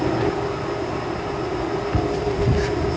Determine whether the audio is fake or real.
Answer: real